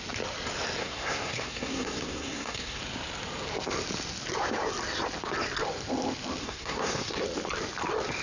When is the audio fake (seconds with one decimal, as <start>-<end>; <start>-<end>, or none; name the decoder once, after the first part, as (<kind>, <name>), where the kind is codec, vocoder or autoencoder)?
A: 0.8-2.8 (codec, SNAC); 6.4-7.2